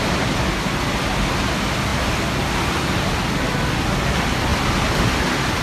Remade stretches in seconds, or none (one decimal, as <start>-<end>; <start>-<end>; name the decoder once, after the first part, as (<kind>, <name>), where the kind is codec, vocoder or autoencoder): none